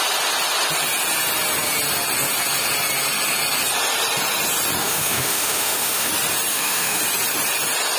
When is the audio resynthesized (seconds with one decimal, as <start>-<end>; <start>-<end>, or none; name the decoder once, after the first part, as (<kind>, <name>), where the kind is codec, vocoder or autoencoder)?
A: 4.8-6.1 (autoencoder, DAC-VAE); 6.5-7.0